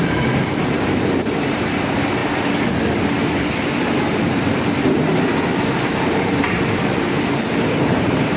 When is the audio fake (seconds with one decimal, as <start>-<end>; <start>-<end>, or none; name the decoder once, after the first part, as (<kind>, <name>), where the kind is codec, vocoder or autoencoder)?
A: 0.0-2.2 (vocoder, BigVGAN v2); 6.0-8.4